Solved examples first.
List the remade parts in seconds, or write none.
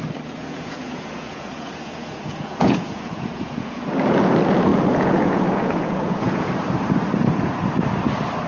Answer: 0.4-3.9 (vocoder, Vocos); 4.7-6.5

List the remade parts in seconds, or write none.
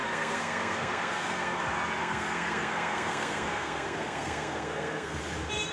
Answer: 0.0-1.6 (codec, SNAC); 2.0-5.2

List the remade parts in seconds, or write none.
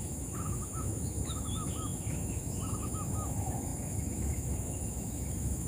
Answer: 0.0-5.7 (autoencoder, DAC-VAE)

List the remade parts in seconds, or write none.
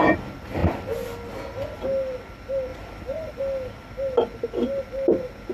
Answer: 2.7-3.4 (vocoder, BigVGAN v2)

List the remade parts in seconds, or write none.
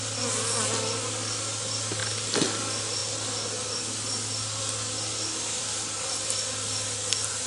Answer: none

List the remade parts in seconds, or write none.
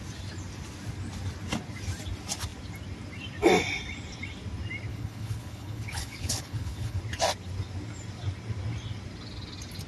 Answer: 4.9-7.0 (codec, HILCodec)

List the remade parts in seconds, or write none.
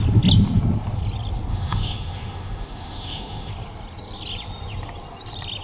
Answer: 1.5-3.5 (autoencoder, DAC-VAE)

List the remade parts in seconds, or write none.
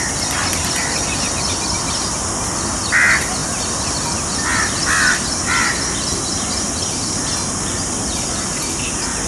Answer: none